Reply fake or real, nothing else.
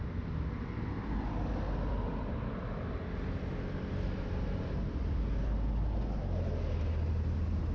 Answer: real